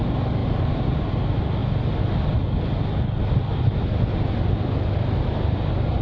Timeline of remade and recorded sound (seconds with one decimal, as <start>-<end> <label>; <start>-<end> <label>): 0.0-0.4 recorded; 0.4-1.1 remade; 1.1-6.0 recorded